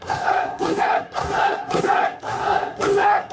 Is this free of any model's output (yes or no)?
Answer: no